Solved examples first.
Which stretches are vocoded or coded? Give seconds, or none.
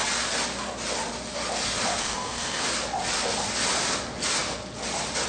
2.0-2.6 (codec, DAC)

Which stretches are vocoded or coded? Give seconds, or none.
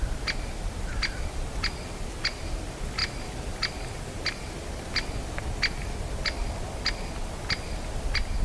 none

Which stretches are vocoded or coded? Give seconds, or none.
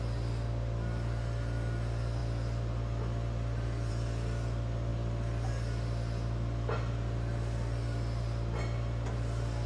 none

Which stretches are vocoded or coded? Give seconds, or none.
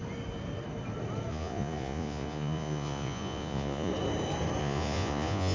1.3-3.9 (vocoder, Vocos); 4.6-5.5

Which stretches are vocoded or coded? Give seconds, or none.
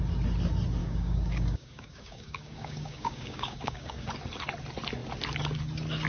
0.8-4.1 (codec, DAC)